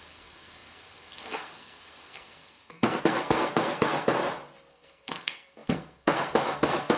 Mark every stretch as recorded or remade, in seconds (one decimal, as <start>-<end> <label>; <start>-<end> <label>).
0.0-4.2 remade; 4.2-4.7 recorded; 4.7-7.0 remade